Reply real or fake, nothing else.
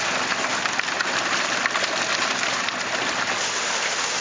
real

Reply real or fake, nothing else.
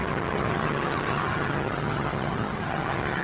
fake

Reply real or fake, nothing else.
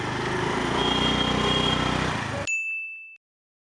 real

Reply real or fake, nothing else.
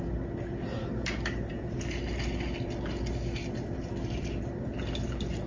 real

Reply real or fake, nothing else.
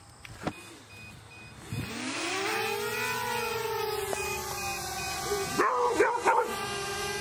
real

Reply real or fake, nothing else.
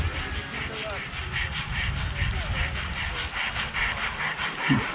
real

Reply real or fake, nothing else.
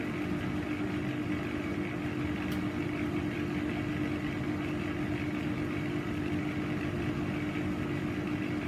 real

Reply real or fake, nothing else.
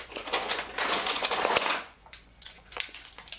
fake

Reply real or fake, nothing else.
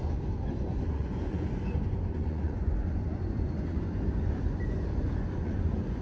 fake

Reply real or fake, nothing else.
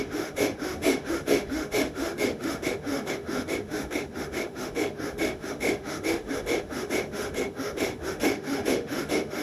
fake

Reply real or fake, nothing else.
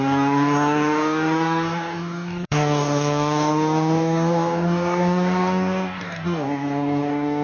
fake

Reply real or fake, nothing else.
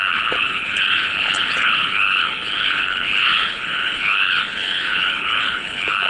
fake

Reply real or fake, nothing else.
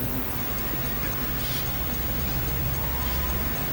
real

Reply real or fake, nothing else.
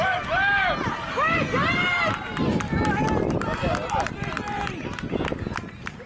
real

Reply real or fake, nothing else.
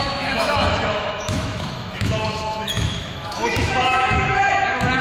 fake